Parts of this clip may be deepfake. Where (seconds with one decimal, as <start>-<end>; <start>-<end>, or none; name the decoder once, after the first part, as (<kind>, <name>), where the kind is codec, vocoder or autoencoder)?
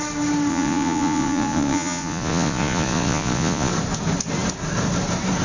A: 0.5-3.7 (vocoder, Vocos)